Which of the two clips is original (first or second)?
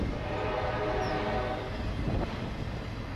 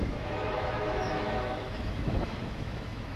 first